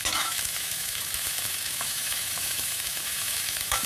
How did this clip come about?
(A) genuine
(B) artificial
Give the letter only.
B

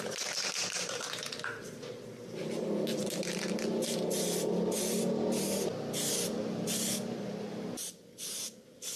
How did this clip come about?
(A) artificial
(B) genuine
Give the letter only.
B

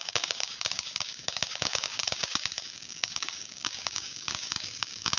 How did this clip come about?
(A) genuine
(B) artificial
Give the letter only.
B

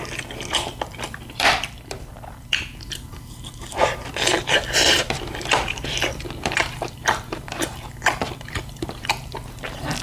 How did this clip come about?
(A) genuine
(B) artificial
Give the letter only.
B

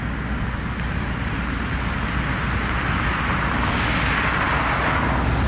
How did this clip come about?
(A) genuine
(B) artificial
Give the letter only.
A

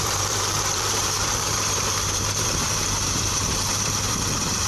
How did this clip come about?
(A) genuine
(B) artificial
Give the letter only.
B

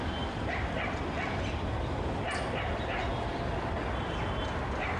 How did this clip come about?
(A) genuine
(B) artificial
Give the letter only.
A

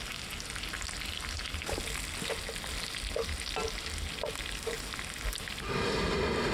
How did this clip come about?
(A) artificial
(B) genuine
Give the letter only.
B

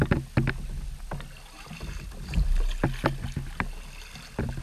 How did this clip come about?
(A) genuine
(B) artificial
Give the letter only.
A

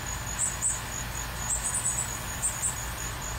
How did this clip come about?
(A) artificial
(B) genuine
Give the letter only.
B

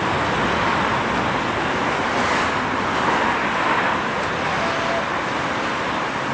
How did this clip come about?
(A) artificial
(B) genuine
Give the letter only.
B